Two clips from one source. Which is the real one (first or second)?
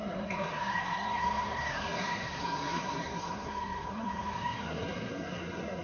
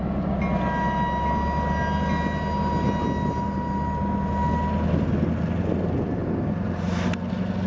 second